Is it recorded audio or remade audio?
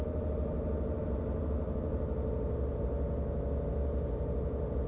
recorded